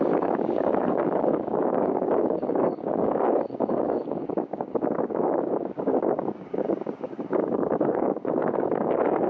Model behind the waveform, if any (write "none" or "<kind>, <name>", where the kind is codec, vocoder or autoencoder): codec, DAC